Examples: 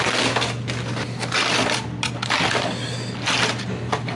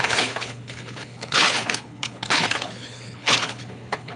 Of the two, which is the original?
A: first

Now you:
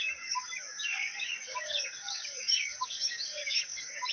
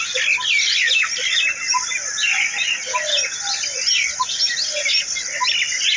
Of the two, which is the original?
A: second